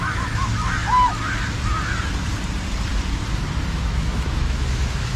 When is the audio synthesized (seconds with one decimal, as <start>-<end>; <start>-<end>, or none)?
0.0-0.5; 3.6-5.2